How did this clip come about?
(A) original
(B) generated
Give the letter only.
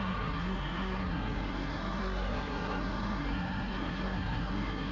B